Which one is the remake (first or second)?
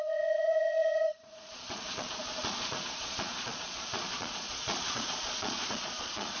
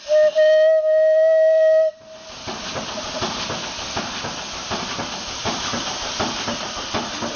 first